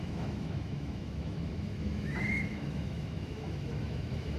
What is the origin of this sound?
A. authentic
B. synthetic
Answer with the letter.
B